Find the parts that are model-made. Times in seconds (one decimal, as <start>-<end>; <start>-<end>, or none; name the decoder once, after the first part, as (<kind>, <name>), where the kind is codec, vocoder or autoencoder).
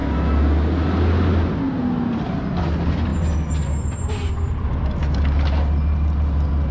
none